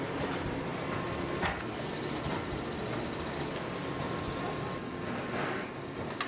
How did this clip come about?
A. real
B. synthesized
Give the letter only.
A